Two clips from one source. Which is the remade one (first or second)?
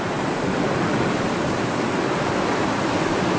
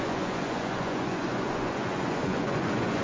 second